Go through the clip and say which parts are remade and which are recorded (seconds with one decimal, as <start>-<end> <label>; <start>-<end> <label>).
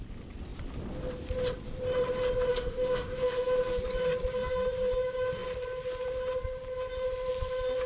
0.0-2.5 recorded; 2.5-3.8 remade; 3.8-7.9 recorded